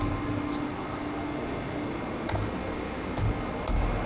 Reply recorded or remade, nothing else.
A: recorded